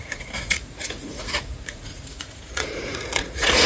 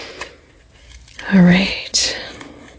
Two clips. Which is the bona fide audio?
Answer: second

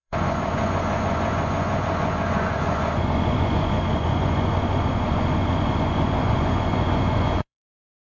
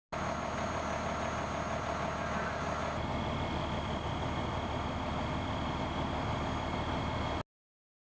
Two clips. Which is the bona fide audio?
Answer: second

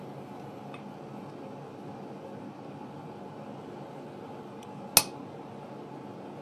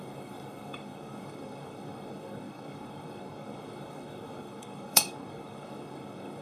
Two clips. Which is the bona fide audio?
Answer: first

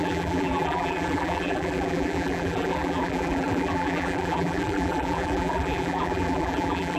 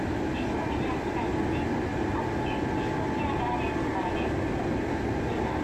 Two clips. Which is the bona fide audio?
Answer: second